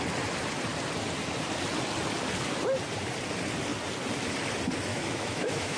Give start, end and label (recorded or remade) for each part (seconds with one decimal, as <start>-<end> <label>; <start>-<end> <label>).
0.0-4.9 recorded; 4.9-5.8 remade